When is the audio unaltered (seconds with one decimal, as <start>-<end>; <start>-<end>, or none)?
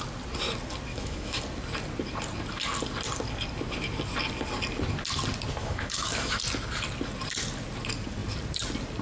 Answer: 0.0-0.9; 1.4-5.6; 6.4-9.0